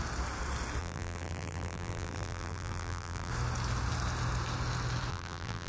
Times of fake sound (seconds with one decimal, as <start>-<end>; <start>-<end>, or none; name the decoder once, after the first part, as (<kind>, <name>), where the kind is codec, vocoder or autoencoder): 0.8-3.3 (vocoder, BigVGAN v2); 5.1-5.7